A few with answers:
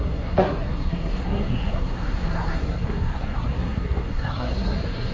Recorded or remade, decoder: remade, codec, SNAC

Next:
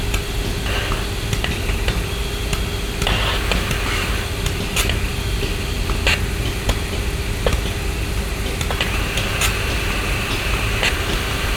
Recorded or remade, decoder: recorded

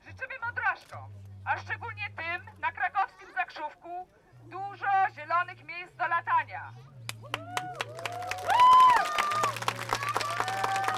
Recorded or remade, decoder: recorded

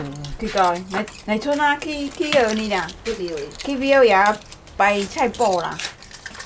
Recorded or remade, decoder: recorded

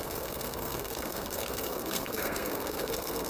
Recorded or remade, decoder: remade, codec, SNAC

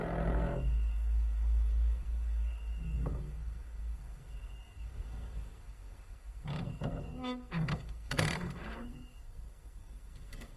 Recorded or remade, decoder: remade, codec, SNAC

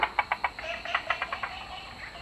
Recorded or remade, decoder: recorded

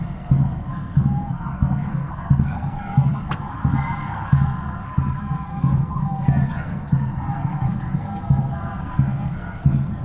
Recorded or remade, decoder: remade, codec, SNAC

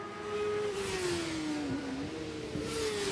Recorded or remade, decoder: recorded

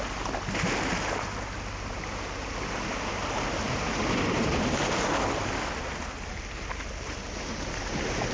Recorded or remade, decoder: recorded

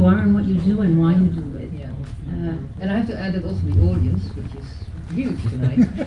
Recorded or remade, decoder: recorded